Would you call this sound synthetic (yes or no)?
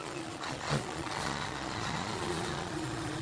yes